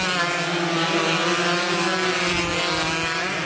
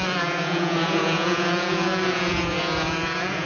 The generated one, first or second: second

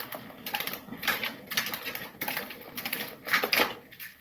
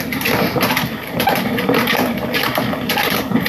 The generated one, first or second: second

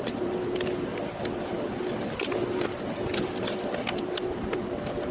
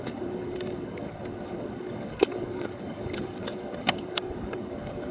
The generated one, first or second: second